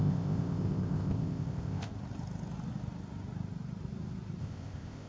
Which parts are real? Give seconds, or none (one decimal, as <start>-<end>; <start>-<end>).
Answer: 1.9-4.4